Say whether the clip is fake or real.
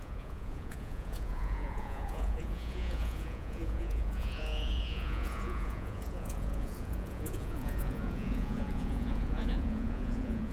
fake